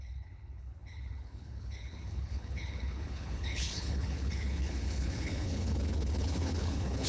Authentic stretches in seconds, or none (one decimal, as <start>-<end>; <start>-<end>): none